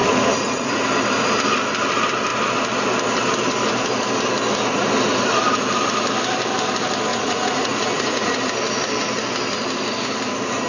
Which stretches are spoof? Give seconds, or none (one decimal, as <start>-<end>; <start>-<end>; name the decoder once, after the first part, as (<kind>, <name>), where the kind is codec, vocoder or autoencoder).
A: 0.0-0.8 (vocoder, Vocos); 7.1-8.4